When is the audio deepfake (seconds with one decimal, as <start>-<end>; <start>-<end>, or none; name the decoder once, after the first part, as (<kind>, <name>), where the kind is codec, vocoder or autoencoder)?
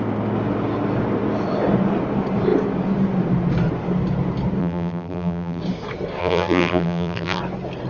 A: 4.6-5.6 (vocoder, BigVGAN v2); 6.2-7.4